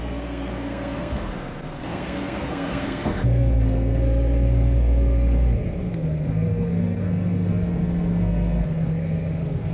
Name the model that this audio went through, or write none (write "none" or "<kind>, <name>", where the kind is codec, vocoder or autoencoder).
codec, SNAC